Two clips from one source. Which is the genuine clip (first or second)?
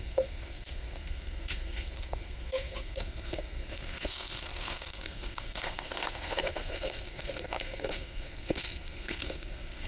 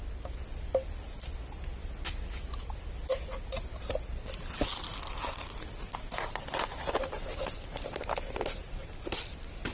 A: second